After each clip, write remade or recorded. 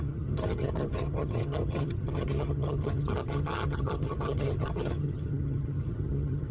remade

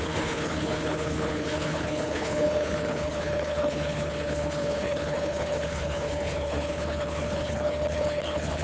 remade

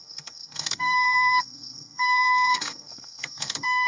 remade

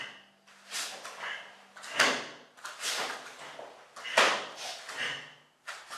recorded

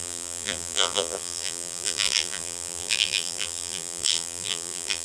remade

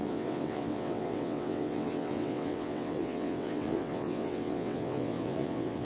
remade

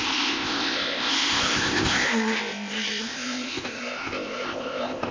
remade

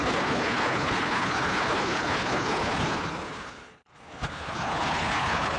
remade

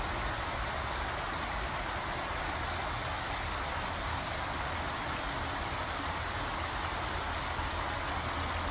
recorded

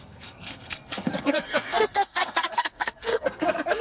remade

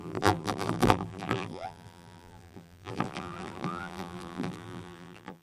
remade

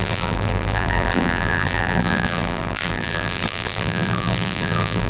remade